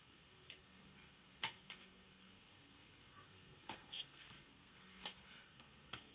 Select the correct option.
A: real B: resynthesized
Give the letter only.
B